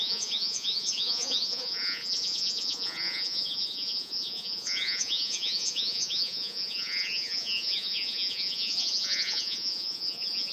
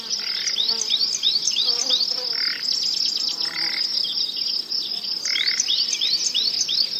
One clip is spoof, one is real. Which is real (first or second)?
second